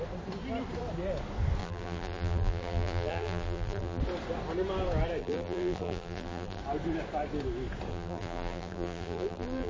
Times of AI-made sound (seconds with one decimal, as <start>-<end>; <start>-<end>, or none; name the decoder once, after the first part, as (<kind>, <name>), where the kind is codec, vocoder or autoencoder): 1.6-4.0 (vocoder, BigVGAN v2); 5.2-6.6; 7.9-9.7